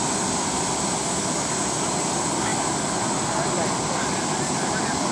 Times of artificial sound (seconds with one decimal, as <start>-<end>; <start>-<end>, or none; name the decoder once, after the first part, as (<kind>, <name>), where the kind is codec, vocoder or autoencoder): none